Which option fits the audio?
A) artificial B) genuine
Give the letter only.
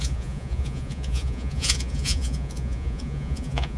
A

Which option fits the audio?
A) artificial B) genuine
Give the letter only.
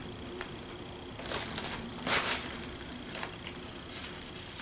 B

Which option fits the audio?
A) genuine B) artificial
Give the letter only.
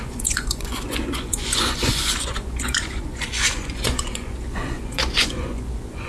B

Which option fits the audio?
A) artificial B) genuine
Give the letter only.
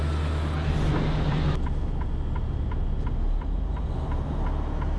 B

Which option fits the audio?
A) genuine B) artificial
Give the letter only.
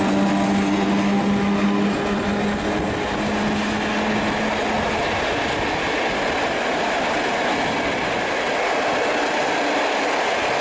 A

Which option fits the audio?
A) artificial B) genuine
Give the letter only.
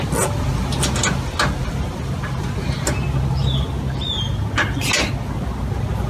B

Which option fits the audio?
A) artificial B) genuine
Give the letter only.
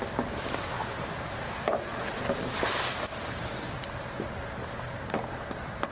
B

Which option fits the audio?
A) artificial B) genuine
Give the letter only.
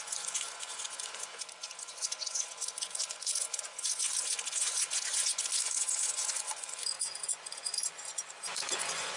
A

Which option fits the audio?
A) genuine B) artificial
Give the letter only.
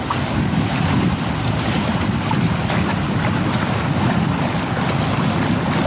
A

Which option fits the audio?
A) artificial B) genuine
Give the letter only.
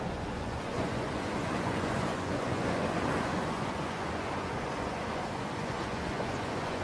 A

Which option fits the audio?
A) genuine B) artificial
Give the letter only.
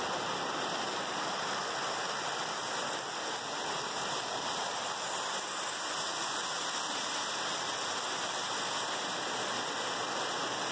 A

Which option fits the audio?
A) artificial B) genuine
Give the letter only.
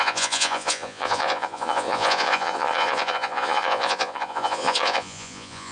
A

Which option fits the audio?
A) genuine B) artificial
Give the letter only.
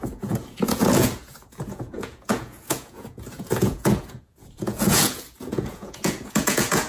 B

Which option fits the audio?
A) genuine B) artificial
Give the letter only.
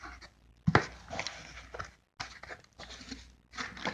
A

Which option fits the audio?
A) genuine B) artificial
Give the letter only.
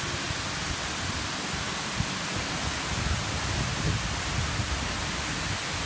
A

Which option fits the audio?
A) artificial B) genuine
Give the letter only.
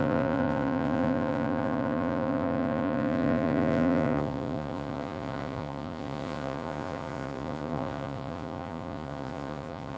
A